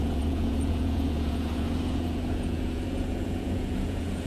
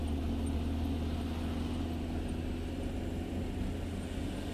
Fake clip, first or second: first